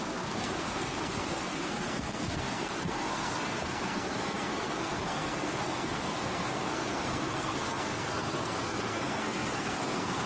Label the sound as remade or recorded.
remade